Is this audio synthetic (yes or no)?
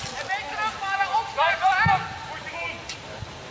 no